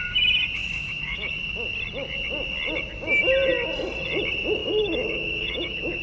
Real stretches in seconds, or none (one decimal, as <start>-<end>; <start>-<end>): 0.0-0.6; 1.3-4.6